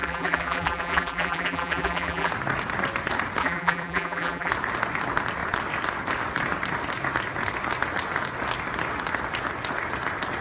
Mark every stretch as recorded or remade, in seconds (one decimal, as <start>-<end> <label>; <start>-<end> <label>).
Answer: 0.0-2.3 remade; 2.3-3.4 recorded; 3.4-4.5 remade; 4.5-10.4 recorded